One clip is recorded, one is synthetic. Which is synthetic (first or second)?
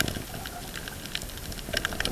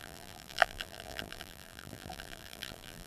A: second